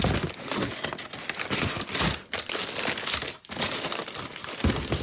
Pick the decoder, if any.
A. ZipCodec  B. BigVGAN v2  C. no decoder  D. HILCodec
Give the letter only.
C